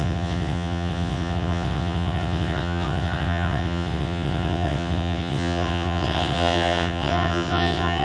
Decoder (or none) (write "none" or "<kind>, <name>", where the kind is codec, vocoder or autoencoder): vocoder, WaveNeXt